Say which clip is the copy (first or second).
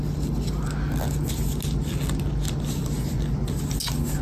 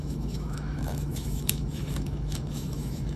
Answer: second